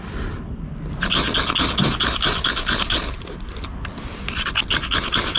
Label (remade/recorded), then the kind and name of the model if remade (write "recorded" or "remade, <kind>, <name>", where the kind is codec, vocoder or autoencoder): recorded